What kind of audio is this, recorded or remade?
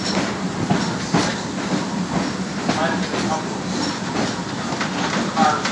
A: recorded